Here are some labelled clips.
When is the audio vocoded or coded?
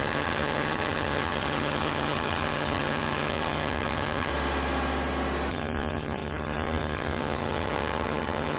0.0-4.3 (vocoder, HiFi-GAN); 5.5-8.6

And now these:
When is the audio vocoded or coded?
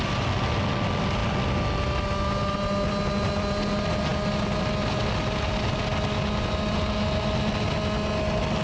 none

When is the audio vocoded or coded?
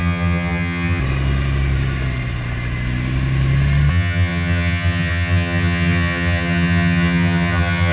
0.0-1.0 (vocoder, HiFi-GAN); 3.9-7.9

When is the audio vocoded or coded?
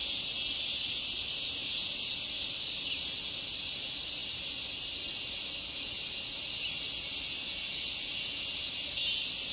none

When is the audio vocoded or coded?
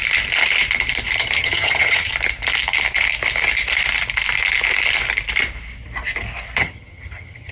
1.2-2.1 (vocoder, HiFi-GAN); 6.6-7.5